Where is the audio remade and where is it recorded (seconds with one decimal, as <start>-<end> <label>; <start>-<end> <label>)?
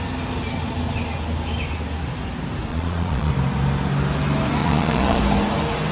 0.0-2.7 recorded; 2.7-3.3 remade; 3.3-4.6 recorded; 4.6-5.2 remade; 5.2-5.9 recorded